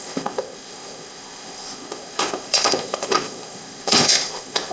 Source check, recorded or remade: remade